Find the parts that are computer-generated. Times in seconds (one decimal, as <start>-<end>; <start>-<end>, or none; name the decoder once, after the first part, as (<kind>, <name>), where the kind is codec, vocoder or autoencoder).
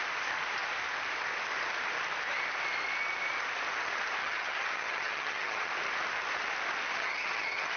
4.2-5.7 (vocoder, HiFi-GAN); 6.9-7.8